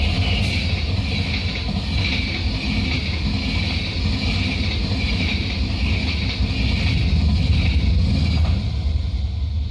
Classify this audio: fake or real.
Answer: real